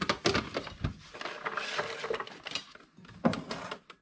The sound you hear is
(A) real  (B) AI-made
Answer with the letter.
A